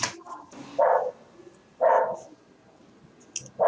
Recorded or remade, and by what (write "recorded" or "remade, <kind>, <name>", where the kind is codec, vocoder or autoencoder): recorded